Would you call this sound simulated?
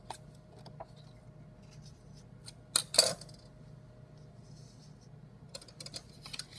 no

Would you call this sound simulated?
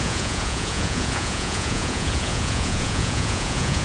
yes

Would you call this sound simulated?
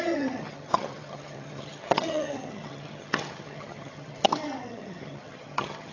yes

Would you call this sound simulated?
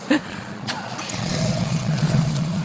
yes